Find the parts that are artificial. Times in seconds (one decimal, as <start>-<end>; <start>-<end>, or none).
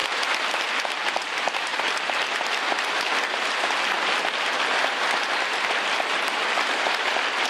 0.5-7.5